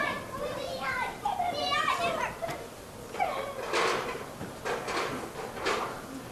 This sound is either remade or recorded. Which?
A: recorded